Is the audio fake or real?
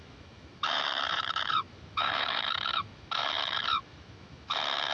fake